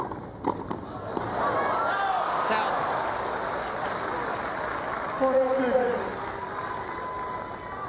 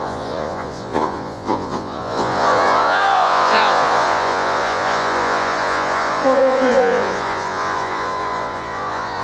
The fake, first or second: second